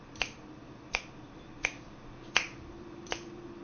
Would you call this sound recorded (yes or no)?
no